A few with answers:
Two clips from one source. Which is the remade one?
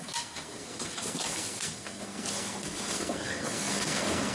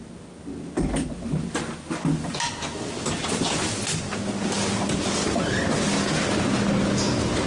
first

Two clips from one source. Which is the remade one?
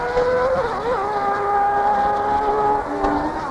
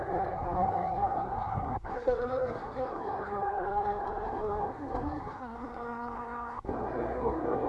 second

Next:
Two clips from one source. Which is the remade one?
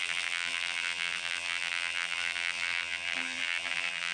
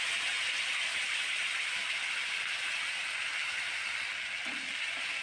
first